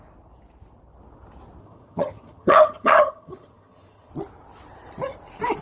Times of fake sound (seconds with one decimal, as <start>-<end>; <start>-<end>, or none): 1.6-4.1